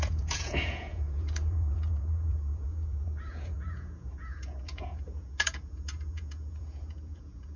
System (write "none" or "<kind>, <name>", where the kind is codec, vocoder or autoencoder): vocoder, Vocos